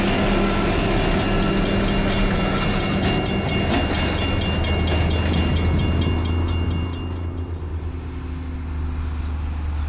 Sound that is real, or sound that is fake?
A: real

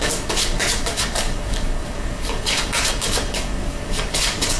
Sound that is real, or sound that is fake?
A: fake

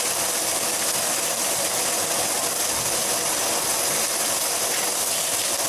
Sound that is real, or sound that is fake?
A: real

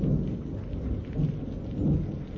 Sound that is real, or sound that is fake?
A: real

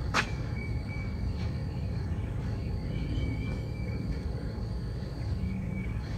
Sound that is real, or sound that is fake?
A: fake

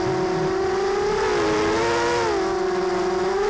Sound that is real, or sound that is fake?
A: real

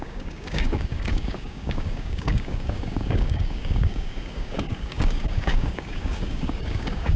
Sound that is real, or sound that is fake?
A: fake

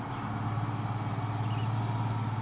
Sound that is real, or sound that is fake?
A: real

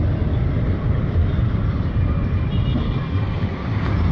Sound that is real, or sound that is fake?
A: real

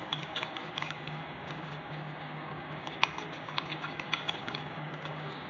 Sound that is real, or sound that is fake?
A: fake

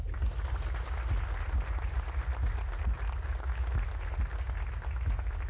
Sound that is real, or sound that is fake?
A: real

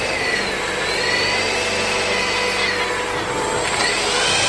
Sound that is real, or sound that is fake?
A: real